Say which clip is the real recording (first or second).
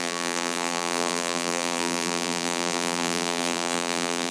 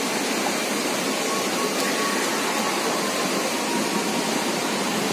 second